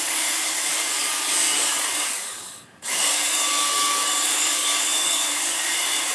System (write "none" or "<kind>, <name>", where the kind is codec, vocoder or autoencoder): codec, DAC